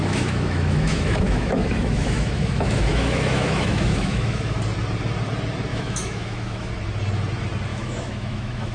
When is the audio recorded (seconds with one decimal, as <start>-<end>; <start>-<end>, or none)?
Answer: 4.6-5.7; 6.7-7.7